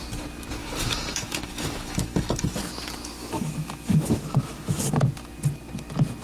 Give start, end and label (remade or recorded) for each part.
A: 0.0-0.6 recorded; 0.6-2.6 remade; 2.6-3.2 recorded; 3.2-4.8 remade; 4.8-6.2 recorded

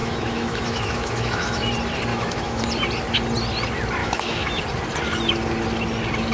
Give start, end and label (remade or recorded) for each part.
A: 0.0-1.7 remade; 1.7-2.1 recorded; 2.1-2.6 remade; 2.6-4.0 recorded; 4.0-4.6 remade; 4.6-6.3 recorded

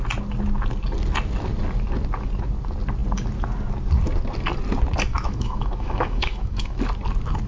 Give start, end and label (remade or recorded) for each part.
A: 0.0-5.1 recorded; 5.1-6.8 remade; 6.8-7.5 recorded

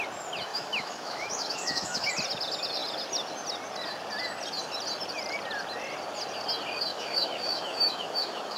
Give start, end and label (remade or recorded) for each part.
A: 0.0-0.5 recorded; 0.5-2.1 remade; 2.1-6.9 recorded; 6.9-8.6 remade

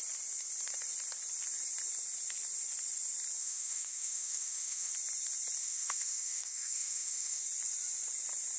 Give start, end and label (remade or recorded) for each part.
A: 0.0-3.4 recorded; 3.4-4.9 remade; 4.9-5.6 recorded; 5.6-7.4 remade; 7.4-8.6 recorded

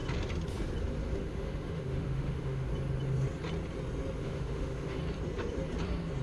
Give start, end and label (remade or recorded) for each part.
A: 0.0-1.0 recorded; 1.0-2.7 remade; 2.7-4.2 recorded; 4.2-5.0 remade; 5.0-6.2 recorded

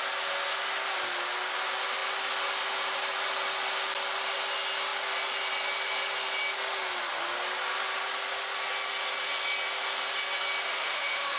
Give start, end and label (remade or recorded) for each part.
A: 0.0-10.7 recorded; 10.7-11.4 remade